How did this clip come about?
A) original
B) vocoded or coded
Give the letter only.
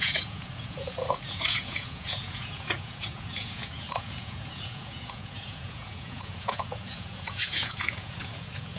B